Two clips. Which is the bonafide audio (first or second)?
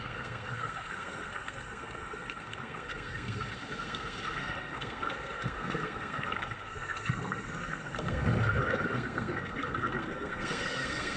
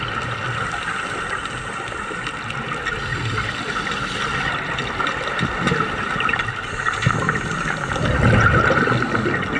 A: second